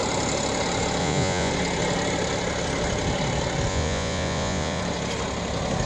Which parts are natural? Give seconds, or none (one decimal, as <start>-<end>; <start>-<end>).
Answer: 0.0-1.0; 1.5-3.7; 4.8-5.9